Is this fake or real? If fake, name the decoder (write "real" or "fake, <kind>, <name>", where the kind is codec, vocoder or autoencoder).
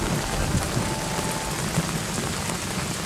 real